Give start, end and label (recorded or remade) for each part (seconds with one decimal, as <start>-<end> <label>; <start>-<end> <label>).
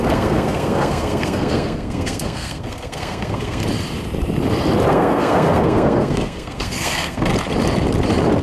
0.0-3.6 remade; 3.6-4.9 recorded; 4.9-7.3 remade; 7.3-8.4 recorded